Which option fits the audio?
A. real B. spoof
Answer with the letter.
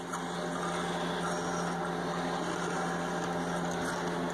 A